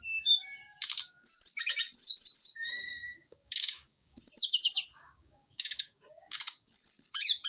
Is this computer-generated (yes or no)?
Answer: yes